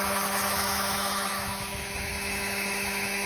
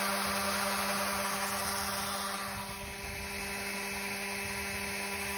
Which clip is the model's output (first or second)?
first